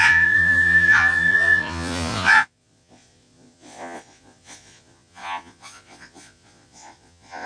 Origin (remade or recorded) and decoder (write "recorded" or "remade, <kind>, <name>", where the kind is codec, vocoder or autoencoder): remade, vocoder, Vocos